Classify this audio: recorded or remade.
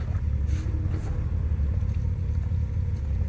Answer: recorded